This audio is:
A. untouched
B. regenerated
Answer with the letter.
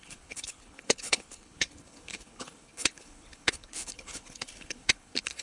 B